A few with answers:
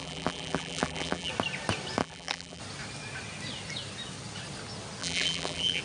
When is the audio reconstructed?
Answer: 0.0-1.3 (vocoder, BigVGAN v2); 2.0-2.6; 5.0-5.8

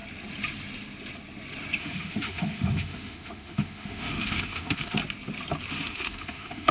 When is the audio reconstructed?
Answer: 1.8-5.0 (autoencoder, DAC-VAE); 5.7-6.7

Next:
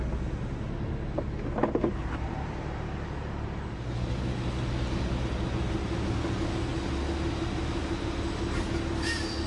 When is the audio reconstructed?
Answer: none